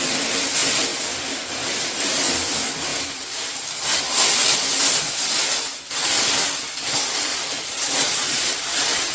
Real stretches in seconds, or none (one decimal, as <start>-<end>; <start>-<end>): 0.0-7.3; 8.5-9.1